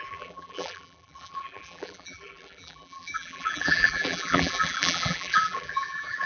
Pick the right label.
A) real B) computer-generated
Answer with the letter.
B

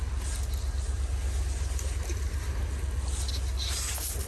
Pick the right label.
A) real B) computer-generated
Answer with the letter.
A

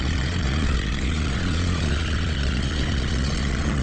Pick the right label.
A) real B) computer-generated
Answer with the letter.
B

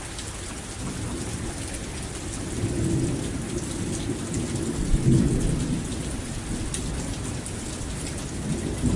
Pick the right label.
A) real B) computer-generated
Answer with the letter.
A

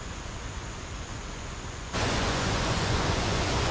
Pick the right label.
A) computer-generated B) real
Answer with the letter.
A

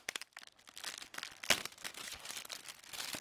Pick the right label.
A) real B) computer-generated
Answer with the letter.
A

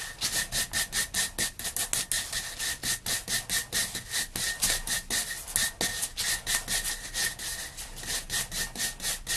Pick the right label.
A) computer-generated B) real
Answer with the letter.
B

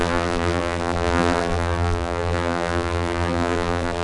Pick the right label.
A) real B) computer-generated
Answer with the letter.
B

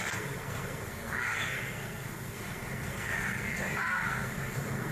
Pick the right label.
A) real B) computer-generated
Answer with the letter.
B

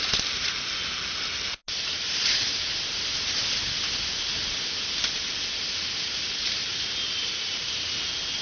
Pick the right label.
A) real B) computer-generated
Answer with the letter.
A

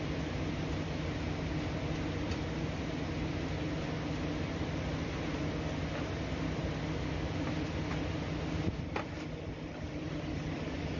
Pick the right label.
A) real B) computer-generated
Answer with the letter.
A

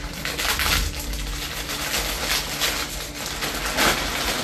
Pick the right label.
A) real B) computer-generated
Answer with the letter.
A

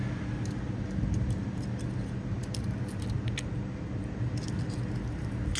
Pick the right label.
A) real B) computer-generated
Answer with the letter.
A